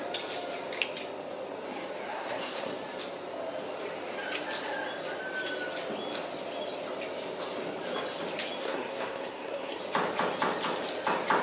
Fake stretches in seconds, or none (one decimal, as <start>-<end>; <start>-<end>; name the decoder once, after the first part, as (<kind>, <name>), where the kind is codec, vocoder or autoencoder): 2.1-2.7 (codec, SNAC); 8.6-9.8